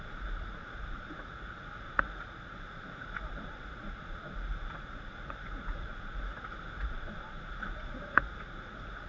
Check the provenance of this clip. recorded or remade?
remade